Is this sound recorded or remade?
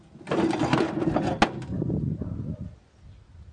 recorded